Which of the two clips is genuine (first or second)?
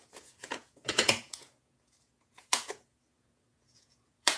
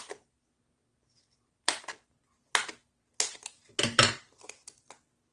second